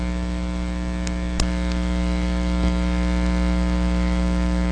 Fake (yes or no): no